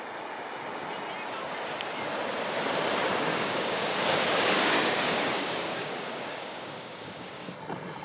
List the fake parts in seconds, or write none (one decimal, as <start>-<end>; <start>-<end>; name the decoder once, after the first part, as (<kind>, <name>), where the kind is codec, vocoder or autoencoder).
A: 3.3-7.5 (codec, DAC)